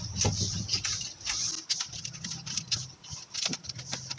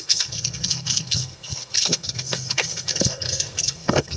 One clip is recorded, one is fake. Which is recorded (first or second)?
first